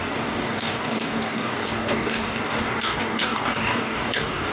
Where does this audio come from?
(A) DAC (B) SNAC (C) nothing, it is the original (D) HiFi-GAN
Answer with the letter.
A